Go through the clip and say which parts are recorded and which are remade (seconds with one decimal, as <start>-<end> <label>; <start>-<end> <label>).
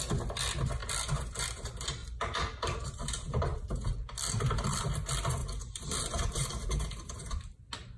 0.0-2.0 recorded; 2.0-3.7 remade; 3.7-5.4 recorded; 5.4-7.6 remade; 7.6-8.0 recorded